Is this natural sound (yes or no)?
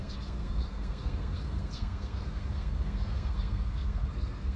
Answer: no